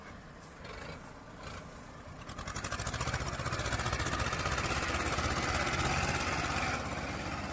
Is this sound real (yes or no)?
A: yes